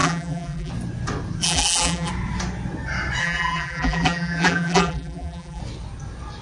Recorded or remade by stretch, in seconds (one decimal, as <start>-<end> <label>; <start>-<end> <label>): 0.0-0.7 remade; 0.7-1.4 recorded; 1.4-2.1 remade; 2.1-3.2 recorded; 3.2-5.6 remade; 5.6-6.4 recorded